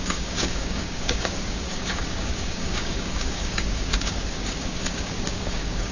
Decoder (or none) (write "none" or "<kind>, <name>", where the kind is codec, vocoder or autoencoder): codec, DAC